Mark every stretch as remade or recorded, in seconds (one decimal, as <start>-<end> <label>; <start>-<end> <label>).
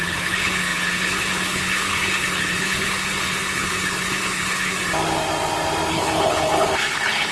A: 0.0-4.8 remade; 4.8-5.9 recorded; 5.9-7.3 remade